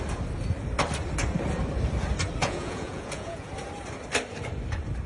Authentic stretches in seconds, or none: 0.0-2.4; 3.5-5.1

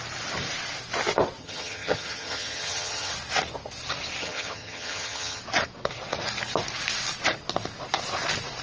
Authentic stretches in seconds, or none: 0.0-1.4; 3.1-4.2; 5.4-8.6